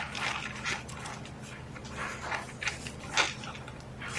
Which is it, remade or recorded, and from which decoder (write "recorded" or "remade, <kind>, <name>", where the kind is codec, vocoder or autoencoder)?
recorded